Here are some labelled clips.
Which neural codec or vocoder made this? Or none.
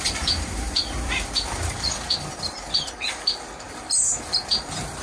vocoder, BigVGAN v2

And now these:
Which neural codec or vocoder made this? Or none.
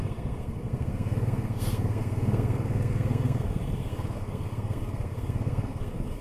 codec, SNAC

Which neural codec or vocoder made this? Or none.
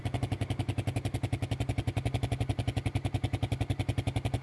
none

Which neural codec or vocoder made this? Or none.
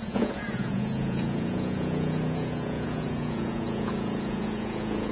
vocoder, Vocos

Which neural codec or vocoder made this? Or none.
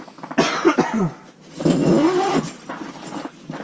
none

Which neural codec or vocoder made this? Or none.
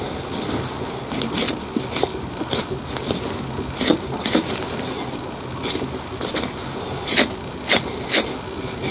none